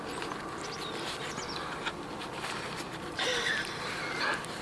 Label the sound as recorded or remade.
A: recorded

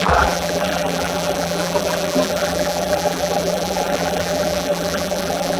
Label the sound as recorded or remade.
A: remade